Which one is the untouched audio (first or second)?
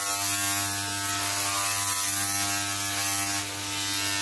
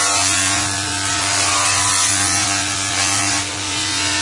first